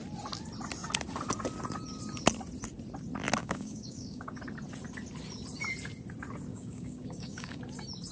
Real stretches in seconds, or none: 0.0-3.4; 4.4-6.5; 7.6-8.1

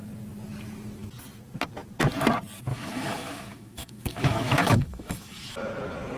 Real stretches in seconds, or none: 0.0-2.7; 5.5-6.2

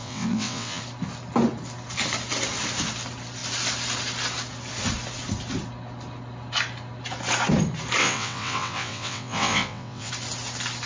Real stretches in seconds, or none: 0.8-8.0; 10.1-10.9

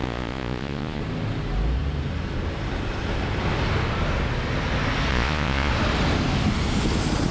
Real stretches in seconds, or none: 1.0-5.1; 5.7-7.3

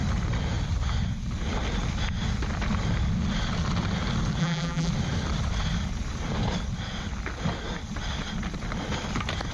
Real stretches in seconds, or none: 0.0-4.4; 4.9-9.5

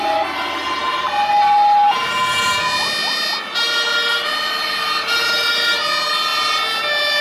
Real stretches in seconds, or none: 0.0-7.2

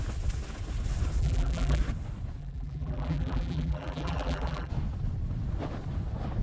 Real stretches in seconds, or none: 0.0-1.2; 1.8-2.4; 4.7-6.4